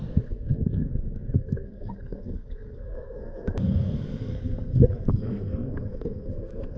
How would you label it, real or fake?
fake